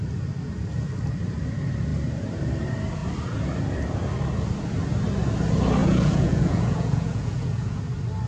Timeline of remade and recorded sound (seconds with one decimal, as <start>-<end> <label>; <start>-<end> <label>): 0.0-5.8 recorded; 5.8-7.8 remade; 7.8-8.3 recorded